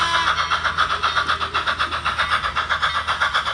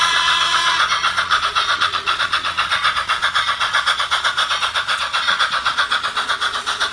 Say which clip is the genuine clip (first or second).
first